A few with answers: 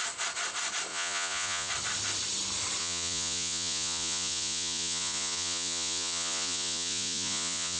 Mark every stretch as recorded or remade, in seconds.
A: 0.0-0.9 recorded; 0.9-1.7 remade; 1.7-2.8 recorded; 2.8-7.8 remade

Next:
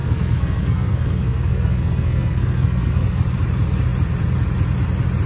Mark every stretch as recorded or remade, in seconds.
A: 0.0-3.2 remade; 3.2-5.3 recorded